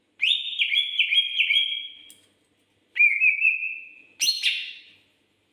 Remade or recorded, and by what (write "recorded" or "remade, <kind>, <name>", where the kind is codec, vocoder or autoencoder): recorded